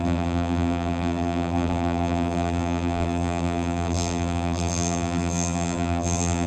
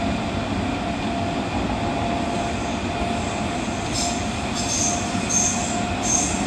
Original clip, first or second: second